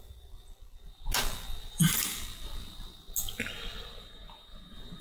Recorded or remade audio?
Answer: recorded